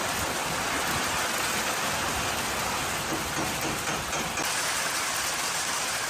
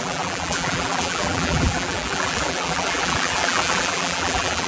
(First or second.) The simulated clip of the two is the second